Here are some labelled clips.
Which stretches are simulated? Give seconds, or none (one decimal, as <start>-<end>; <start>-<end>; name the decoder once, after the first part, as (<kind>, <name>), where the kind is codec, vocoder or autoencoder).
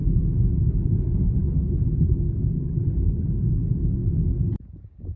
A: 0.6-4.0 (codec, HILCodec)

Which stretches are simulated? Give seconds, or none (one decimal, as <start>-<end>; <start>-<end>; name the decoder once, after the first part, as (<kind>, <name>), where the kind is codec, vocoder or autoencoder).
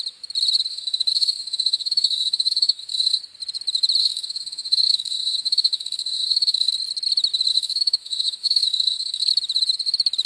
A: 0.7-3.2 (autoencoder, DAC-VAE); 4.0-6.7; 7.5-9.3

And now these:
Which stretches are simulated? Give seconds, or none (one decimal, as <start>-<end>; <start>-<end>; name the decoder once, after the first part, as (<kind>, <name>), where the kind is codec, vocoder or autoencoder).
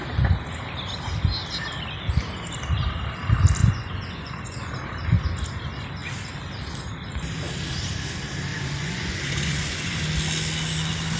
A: 3.6-4.7 (vocoder, Vocos); 8.5-10.0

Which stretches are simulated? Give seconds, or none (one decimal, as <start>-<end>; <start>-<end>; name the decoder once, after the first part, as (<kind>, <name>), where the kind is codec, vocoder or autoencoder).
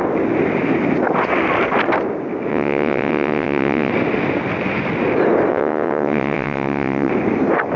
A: 2.5-3.9 (vocoder, WaveNeXt); 5.5-7.1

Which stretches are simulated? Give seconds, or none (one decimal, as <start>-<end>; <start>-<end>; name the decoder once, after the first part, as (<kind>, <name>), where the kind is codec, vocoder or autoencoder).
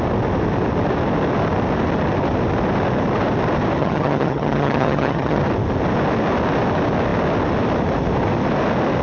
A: 3.8-5.4 (vocoder, HiFi-GAN)